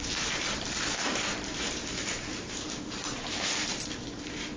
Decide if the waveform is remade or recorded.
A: remade